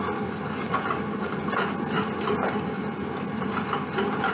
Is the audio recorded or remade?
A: recorded